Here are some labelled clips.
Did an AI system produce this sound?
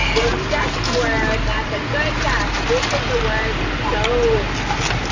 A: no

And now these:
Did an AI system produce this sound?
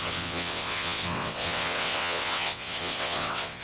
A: yes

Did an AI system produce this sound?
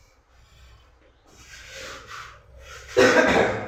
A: no